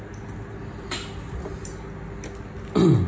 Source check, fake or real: real